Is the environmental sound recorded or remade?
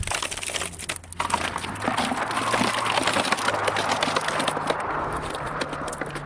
recorded